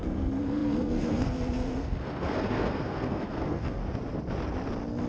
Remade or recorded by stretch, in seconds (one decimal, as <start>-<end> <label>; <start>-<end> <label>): 0.0-3.8 remade; 3.8-5.1 recorded